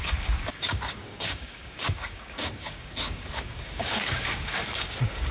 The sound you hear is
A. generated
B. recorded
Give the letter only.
A